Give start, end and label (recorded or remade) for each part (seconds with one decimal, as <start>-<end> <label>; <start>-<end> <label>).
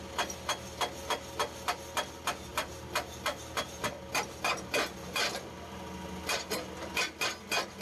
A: 0.0-2.5 recorded; 2.5-3.9 remade; 3.9-7.8 recorded